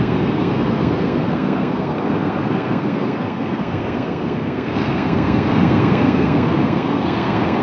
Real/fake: fake